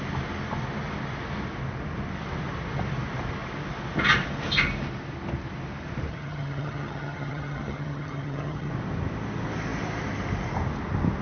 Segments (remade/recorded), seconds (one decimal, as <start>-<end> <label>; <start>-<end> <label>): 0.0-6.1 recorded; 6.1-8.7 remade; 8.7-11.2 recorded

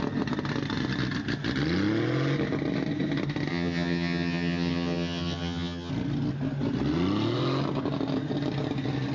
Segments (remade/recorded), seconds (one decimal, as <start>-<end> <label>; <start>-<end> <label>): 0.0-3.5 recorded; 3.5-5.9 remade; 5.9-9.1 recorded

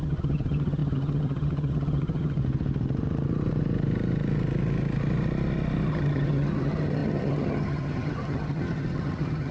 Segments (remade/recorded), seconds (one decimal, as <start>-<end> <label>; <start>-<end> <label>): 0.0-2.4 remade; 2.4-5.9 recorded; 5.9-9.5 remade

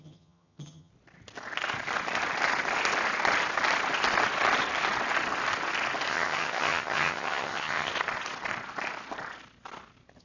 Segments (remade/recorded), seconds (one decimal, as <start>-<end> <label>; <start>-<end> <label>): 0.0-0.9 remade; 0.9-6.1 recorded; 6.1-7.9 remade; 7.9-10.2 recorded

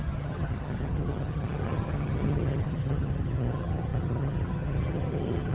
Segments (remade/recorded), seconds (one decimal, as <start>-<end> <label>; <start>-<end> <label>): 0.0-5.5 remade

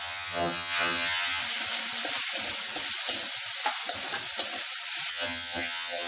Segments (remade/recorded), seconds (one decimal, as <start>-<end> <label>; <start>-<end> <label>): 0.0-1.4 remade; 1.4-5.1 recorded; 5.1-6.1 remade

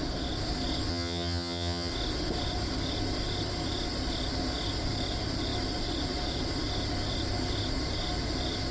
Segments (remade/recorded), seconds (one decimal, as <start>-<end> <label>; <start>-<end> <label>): 0.0-0.9 recorded; 0.9-1.9 remade; 1.9-8.7 recorded

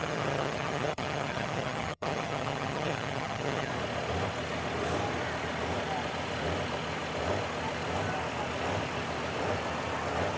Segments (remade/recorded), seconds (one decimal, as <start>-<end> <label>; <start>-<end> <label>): 0.0-3.7 remade; 3.7-10.4 recorded